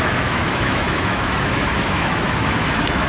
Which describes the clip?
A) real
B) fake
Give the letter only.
B